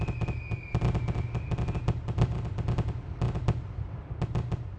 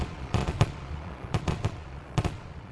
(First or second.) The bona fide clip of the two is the first